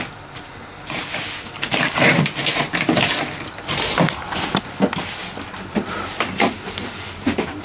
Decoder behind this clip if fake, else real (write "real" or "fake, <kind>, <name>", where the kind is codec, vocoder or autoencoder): real